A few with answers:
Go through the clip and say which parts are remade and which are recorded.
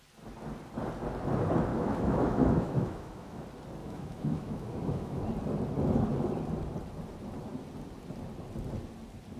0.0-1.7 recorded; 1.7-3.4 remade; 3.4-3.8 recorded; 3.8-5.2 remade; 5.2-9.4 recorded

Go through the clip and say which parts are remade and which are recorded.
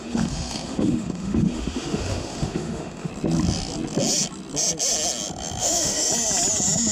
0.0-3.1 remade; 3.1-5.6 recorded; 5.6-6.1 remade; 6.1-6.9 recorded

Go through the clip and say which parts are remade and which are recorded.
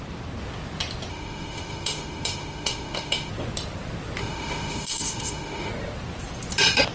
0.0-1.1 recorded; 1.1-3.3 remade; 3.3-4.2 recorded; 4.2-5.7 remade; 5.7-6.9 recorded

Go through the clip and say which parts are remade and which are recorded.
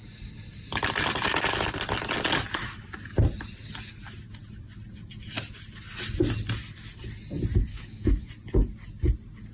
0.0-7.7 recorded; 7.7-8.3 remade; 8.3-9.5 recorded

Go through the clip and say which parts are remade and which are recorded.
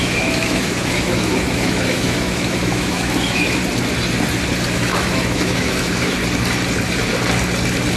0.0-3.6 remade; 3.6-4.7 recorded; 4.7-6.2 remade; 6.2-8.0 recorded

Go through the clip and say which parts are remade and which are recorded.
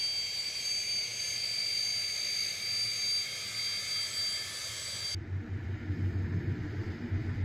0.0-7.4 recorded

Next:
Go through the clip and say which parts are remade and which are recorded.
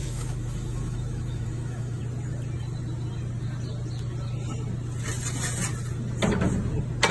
0.0-2.0 remade; 2.0-7.1 recorded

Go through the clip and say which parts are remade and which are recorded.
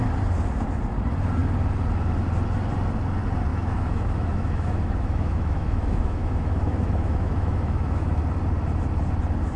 0.0-3.5 recorded; 3.5-8.2 remade; 8.2-9.6 recorded